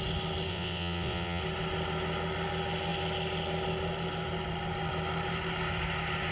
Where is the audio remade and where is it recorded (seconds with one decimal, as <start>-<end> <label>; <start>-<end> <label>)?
0.0-0.5 recorded; 0.5-1.4 remade; 1.4-6.3 recorded